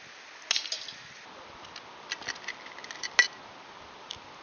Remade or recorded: recorded